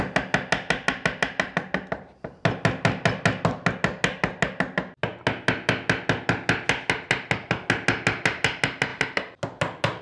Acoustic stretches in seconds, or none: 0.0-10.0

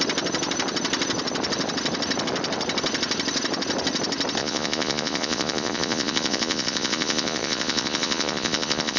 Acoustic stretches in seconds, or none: 0.0-4.4